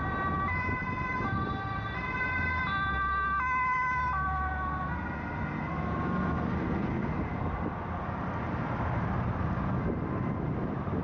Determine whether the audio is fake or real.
real